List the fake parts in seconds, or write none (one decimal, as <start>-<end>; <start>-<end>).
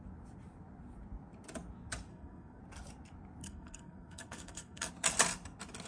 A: 2.1-2.6; 3.4-4.9